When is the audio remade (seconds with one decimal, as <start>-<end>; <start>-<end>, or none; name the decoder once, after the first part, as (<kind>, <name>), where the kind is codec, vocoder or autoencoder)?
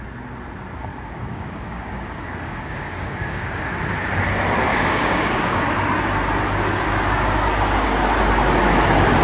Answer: 0.9-3.6 (codec, DAC); 4.7-5.6